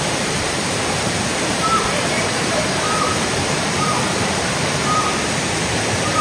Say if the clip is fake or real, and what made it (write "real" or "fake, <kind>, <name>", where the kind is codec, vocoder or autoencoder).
fake, vocoder, BigVGAN v2